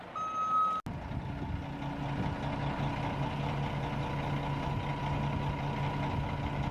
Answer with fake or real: real